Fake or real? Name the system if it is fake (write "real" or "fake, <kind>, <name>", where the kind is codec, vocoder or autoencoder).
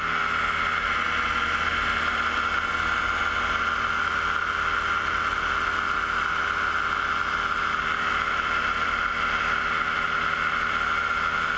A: real